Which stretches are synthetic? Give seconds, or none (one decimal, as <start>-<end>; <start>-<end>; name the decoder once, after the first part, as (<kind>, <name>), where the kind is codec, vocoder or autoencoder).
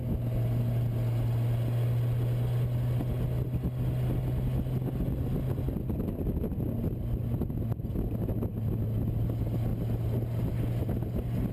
none